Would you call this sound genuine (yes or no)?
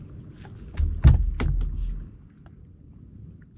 yes